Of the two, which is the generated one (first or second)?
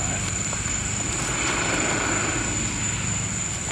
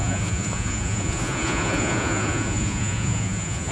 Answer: second